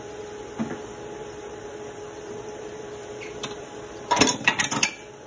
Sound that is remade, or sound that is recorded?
remade